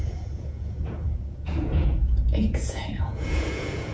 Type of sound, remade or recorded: remade